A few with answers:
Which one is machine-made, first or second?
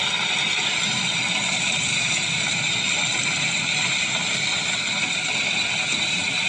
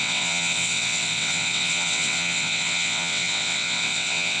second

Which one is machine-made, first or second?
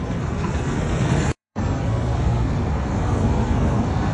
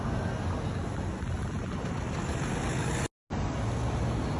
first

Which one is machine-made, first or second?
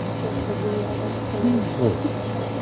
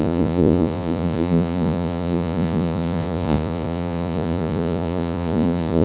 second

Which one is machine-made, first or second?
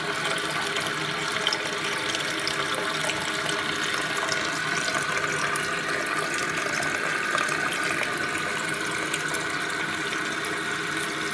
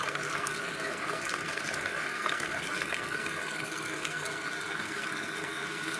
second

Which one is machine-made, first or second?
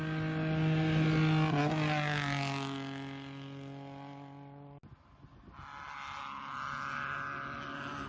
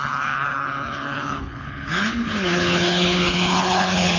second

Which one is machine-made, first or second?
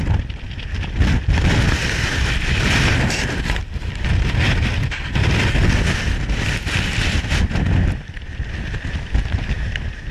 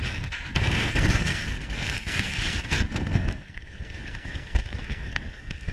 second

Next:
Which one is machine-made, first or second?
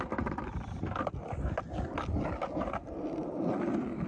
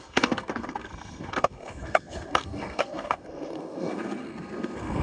second